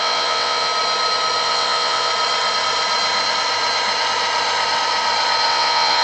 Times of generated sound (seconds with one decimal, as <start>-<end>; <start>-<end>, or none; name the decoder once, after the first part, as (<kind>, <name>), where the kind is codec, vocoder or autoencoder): 0.0-0.7 (vocoder, WaveNeXt); 1.4-2.1; 5.5-6.0